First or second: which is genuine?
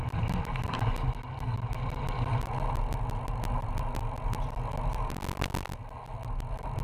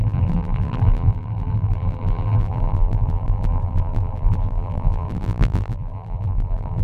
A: first